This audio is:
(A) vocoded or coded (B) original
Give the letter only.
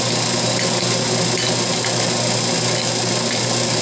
B